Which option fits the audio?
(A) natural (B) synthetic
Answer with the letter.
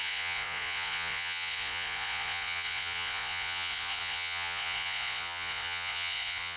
B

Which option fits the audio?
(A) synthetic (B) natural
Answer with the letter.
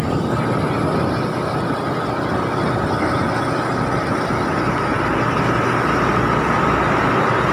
B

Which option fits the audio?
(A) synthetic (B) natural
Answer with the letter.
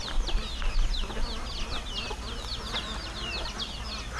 B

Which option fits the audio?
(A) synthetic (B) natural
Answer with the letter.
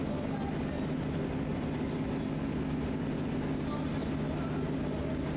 B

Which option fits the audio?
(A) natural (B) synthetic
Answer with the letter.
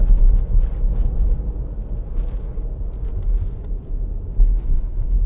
A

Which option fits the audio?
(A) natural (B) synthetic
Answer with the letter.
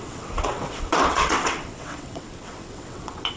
B